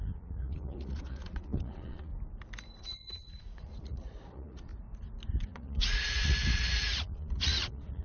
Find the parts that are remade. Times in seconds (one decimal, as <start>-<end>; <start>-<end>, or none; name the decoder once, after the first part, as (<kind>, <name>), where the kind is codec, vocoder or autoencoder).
0.0-2.1 (vocoder, Vocos); 2.8-4.7; 5.4-8.0